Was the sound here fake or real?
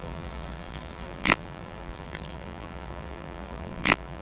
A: fake